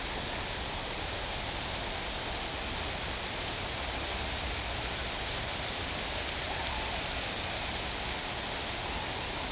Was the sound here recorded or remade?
recorded